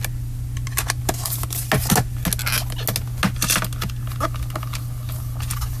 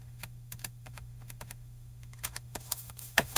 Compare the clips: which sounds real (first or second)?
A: first